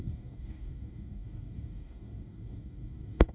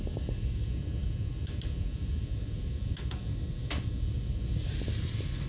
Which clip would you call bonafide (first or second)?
second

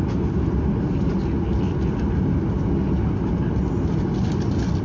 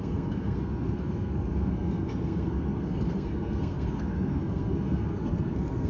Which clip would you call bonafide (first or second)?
first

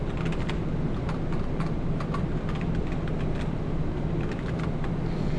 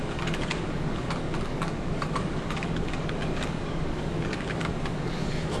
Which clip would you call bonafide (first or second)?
first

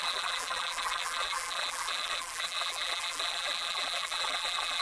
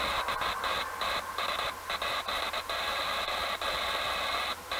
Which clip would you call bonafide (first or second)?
second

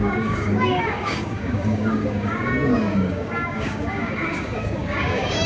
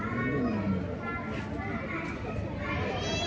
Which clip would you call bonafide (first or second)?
second